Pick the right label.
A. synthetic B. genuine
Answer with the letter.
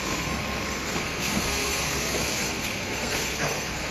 A